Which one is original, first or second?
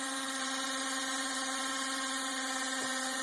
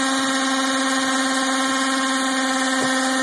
second